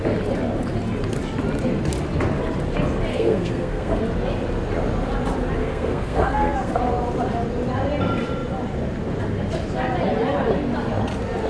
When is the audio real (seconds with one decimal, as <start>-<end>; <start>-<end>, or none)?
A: 0.0-3.1; 4.0-5.6; 6.8-11.5